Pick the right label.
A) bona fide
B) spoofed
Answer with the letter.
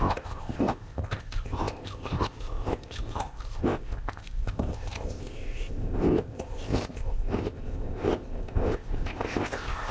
B